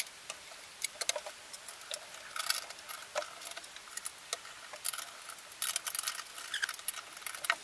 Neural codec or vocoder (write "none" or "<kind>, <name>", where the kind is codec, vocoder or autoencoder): none